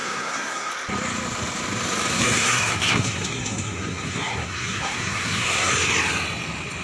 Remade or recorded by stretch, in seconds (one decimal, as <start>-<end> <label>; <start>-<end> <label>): 0.0-0.7 remade; 0.7-2.1 recorded; 2.1-5.7 remade; 5.7-6.8 recorded